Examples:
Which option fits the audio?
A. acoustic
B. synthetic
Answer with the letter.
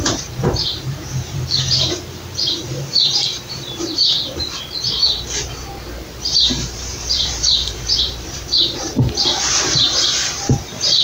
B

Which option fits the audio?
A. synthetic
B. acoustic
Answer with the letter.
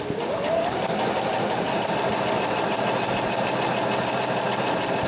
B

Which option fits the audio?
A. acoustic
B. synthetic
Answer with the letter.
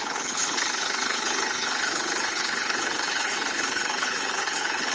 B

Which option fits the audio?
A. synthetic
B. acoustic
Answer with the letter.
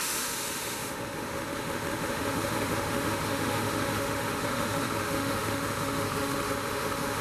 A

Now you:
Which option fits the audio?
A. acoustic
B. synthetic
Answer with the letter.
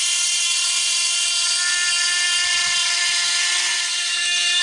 A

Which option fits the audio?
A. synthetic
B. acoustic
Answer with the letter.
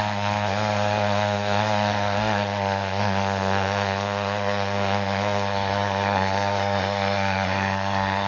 A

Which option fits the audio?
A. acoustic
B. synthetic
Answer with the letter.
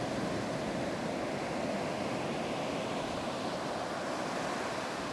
A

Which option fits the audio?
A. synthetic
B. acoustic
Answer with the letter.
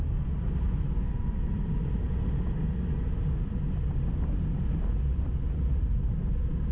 B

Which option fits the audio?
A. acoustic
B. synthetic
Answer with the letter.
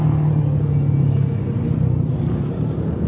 A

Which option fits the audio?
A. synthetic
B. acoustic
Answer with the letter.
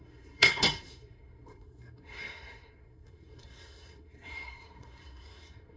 A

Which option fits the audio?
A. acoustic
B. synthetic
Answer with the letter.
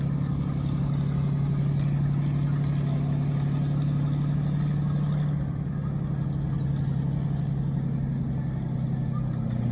A